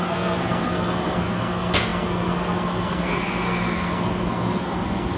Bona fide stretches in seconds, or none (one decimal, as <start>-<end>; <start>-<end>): none